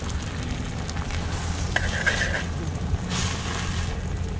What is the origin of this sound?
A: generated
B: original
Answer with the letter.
B